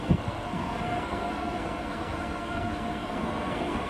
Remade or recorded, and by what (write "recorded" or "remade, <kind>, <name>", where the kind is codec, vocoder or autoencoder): remade, codec, SNAC